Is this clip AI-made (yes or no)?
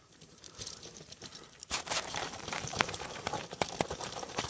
yes